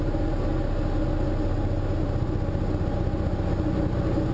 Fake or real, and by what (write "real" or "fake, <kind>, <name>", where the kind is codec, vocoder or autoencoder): real